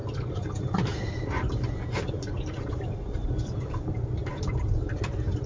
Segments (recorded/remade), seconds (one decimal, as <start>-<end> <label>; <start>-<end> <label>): 0.0-5.5 remade